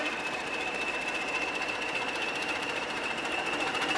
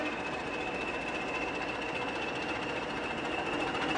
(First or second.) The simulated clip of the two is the first